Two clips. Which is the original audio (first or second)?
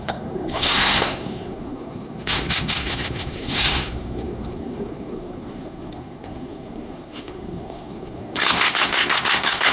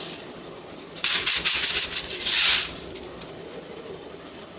second